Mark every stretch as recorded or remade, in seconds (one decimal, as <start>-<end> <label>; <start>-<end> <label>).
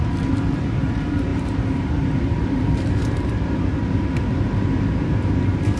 0.0-5.8 remade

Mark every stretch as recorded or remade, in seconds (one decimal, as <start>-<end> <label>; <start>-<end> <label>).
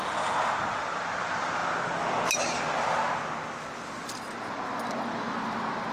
0.0-5.9 recorded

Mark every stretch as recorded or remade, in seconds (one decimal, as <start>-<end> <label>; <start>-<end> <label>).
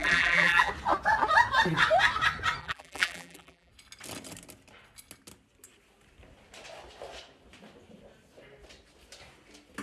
0.0-0.7 remade; 0.7-2.6 recorded; 2.6-3.7 remade; 3.7-9.8 recorded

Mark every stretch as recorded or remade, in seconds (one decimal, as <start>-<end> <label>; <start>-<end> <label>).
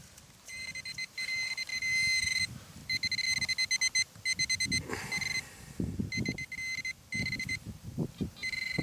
0.0-2.8 remade; 2.8-7.2 recorded; 7.2-8.8 remade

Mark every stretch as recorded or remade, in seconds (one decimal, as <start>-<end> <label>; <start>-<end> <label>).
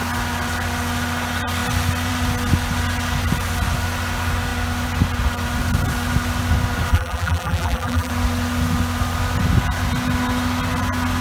0.0-6.9 recorded; 6.9-8.1 remade; 8.1-11.2 recorded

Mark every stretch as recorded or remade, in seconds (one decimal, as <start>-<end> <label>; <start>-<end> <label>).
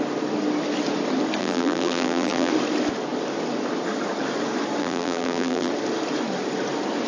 0.0-1.4 recorded; 1.4-2.5 remade; 2.5-4.8 recorded; 4.8-5.7 remade; 5.7-7.1 recorded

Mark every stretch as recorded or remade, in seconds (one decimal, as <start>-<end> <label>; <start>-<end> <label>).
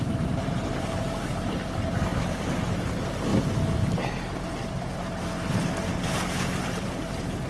0.0-7.5 recorded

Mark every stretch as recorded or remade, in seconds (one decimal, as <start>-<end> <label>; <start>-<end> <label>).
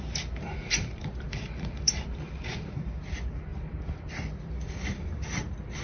0.0-3.5 remade; 3.5-4.1 recorded; 4.1-5.8 remade